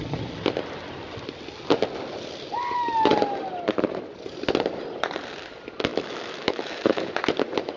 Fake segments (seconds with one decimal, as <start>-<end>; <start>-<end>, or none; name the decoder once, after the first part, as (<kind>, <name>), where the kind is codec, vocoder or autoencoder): 5.9-7.1 (autoencoder, DAC-VAE)